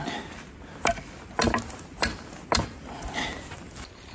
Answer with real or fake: real